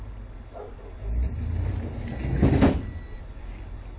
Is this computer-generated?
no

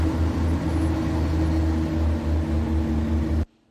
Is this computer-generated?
no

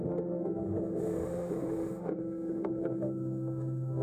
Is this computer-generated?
yes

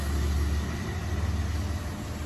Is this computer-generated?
no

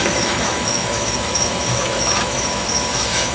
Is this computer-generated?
yes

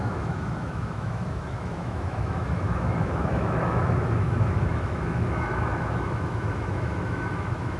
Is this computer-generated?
yes